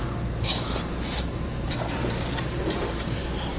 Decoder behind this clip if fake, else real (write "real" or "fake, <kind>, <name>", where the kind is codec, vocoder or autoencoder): fake, vocoder, BigVGAN v2